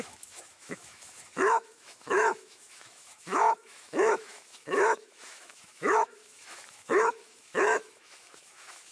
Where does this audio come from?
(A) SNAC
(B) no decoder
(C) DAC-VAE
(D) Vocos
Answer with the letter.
C